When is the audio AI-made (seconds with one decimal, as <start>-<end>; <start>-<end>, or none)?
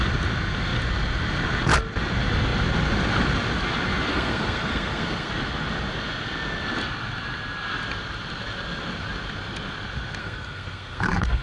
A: 4.1-5.3; 10.2-11.4